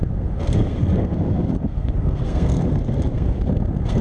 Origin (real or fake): fake